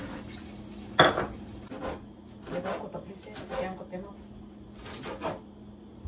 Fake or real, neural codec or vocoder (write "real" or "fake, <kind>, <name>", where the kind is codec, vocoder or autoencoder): real